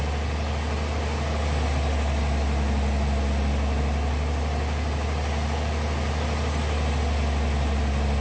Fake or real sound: real